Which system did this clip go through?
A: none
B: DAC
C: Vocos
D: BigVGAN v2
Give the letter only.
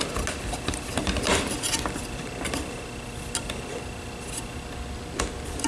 A